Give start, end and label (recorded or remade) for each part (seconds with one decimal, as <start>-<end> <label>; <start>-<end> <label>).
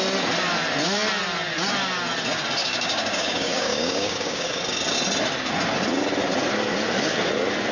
0.0-2.6 recorded; 2.6-4.6 remade; 4.6-7.7 recorded